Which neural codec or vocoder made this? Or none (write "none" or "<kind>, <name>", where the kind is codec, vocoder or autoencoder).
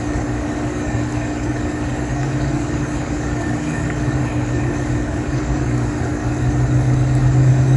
codec, DAC